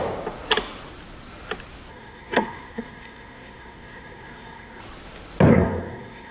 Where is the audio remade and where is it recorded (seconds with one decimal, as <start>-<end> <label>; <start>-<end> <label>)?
0.0-1.9 recorded; 1.9-4.8 remade; 4.8-5.5 recorded; 5.5-6.3 remade